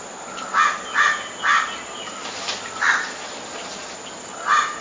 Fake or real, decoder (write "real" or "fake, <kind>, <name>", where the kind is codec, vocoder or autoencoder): real